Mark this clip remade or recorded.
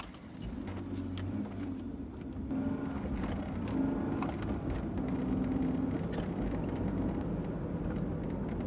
recorded